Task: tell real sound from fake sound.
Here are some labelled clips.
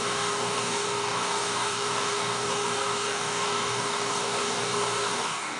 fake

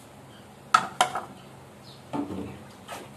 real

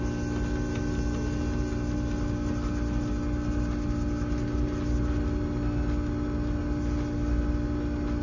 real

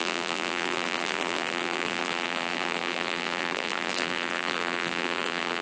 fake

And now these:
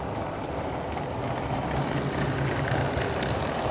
real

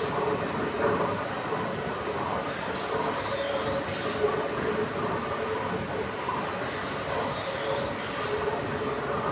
real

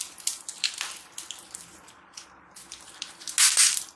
real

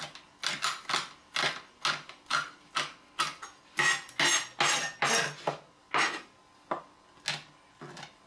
real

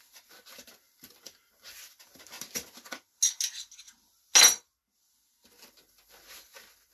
real